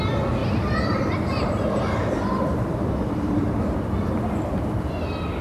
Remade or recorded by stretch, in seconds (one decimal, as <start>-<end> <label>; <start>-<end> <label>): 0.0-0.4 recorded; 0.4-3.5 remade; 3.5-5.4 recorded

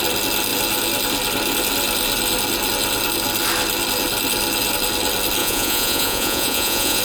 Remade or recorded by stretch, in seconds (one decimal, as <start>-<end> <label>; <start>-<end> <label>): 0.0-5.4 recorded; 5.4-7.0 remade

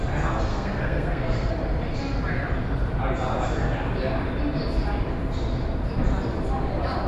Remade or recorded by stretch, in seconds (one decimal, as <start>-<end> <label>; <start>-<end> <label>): 0.0-0.5 recorded; 0.5-1.5 remade; 1.5-7.1 recorded